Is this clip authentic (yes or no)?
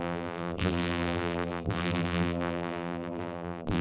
no